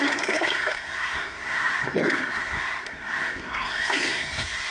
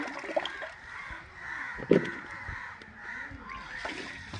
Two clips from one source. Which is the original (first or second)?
second